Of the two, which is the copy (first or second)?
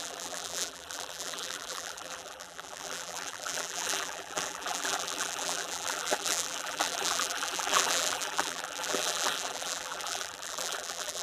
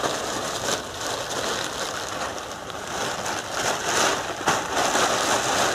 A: first